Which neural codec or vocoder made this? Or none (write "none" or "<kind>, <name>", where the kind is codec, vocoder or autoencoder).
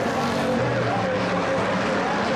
none